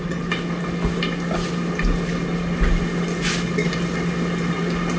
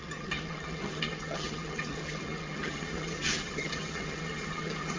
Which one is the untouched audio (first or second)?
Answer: first